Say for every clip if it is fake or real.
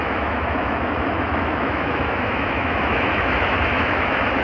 fake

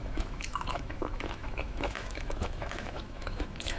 fake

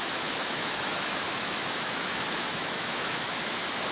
fake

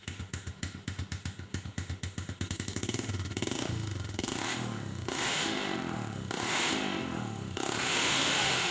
fake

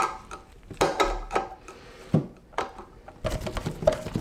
real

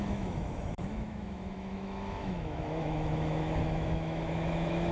fake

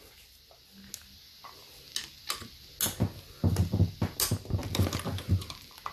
real